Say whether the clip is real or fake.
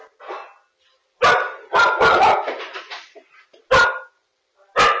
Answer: real